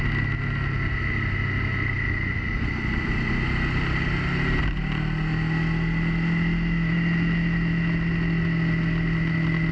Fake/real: real